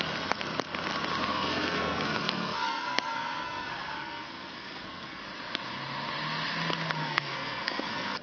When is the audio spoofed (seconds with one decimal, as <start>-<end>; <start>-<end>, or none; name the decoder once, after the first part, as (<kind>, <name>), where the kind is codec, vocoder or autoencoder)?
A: 1.3-5.2 (codec, SNAC); 7.0-8.2